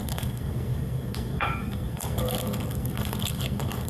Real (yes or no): no